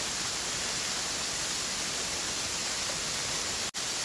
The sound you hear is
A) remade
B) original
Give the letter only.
B